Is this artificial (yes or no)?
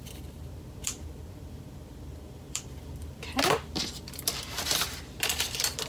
yes